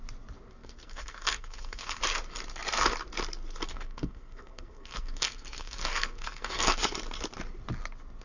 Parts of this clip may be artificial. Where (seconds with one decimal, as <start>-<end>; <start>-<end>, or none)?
0.6-2.0; 3.7-6.8